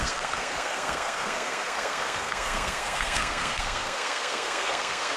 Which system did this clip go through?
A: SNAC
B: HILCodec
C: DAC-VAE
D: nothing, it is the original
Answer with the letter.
A